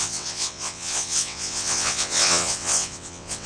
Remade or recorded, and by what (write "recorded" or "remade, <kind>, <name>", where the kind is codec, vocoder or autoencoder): remade, vocoder, WaveNeXt